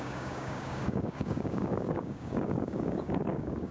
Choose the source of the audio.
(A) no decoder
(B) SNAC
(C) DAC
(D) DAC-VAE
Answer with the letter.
C